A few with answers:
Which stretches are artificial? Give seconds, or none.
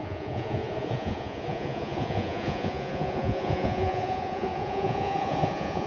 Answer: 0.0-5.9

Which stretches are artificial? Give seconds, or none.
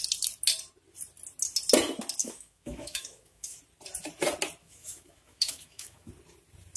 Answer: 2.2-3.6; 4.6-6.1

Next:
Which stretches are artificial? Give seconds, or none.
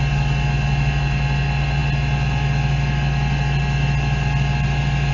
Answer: none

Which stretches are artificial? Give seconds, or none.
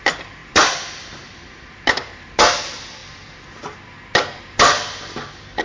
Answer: none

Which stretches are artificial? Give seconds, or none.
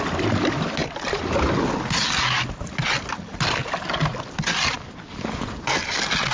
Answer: none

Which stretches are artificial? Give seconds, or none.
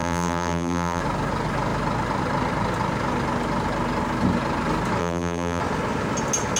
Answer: 0.0-1.0; 5.0-5.6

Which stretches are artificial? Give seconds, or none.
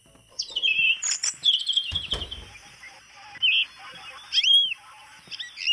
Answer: none